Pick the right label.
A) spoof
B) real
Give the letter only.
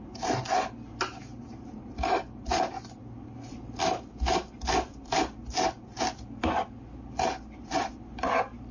B